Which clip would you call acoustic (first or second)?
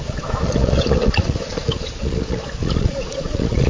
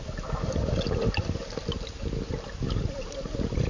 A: second